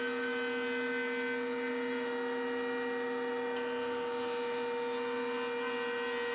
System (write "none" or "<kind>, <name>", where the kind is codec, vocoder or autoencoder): none